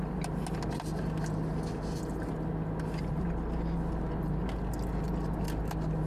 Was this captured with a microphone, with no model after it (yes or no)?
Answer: yes